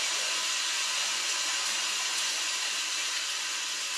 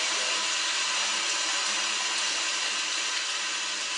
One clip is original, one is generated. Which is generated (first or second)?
first